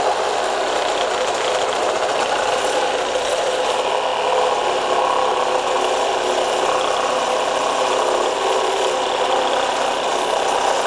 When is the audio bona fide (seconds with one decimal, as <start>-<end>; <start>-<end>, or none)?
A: 0.0-10.9